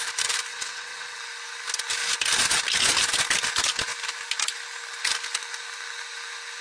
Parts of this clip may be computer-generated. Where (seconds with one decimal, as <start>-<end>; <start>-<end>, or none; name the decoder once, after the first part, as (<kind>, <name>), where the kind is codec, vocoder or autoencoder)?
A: 0.5-1.2 (vocoder, WaveNeXt)